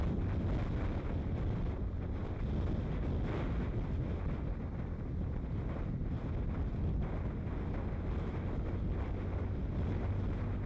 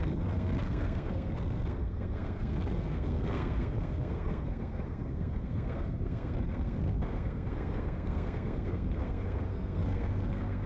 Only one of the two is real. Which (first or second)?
first